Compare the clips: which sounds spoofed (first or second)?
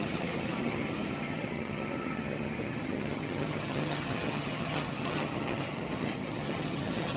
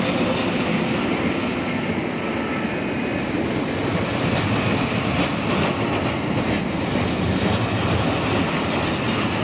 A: first